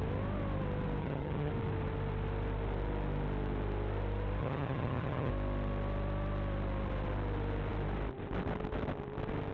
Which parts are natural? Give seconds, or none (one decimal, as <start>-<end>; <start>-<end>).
0.0-1.0; 1.5-4.4; 5.3-9.5